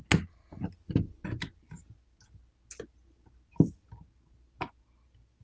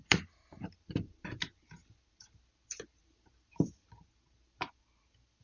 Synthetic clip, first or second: second